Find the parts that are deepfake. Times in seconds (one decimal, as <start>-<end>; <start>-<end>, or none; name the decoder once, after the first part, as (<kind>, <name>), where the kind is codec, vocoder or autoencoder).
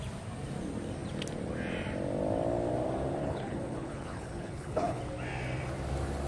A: 3.2-5.0 (codec, HILCodec)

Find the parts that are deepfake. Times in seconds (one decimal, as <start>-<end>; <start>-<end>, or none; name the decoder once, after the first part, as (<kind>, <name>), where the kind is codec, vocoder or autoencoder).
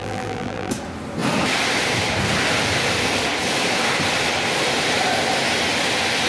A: 0.0-0.7 (vocoder, BigVGAN v2)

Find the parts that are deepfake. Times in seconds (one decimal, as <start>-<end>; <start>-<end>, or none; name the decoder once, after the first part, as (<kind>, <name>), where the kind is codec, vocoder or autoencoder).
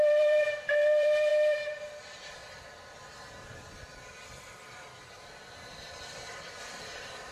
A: 0.0-1.3 (vocoder, BigVGAN v2); 1.8-2.4; 6.4-7.3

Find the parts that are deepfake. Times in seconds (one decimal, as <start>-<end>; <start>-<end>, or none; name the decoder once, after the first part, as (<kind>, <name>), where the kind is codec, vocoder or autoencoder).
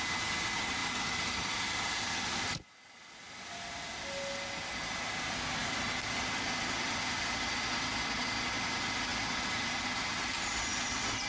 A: none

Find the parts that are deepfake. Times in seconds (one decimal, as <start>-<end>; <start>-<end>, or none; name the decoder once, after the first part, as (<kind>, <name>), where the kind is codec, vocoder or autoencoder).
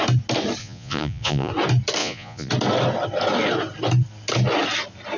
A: 0.6-1.5 (vocoder, Vocos); 2.0-2.5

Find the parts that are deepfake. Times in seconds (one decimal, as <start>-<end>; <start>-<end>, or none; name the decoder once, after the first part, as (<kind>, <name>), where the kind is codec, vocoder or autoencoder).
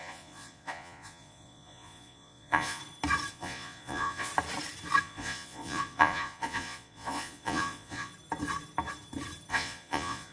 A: 0.0-2.8 (vocoder, Vocos); 3.3-4.3; 5.0-8.1; 9.5-10.3